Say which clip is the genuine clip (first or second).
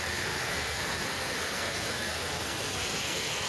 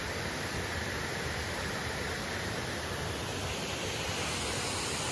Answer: second